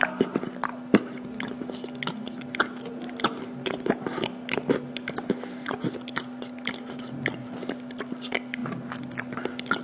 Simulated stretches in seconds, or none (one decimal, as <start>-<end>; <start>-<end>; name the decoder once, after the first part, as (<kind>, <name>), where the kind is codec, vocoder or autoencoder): none